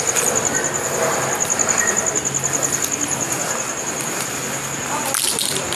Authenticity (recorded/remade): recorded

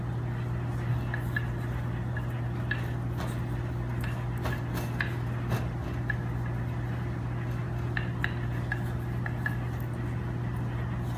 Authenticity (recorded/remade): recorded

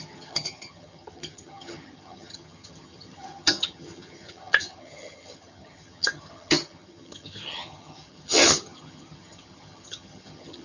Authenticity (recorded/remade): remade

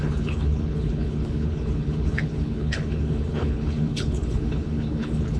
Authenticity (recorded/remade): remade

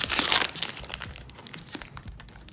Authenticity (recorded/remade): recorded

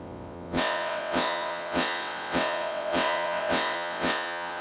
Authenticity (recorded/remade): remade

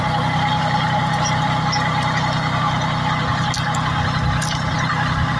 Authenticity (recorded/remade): recorded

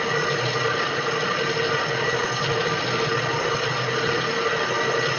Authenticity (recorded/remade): recorded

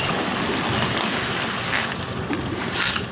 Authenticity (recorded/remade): recorded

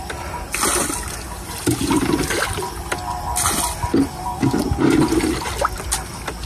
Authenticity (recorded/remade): recorded